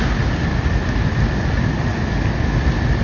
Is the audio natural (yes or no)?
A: yes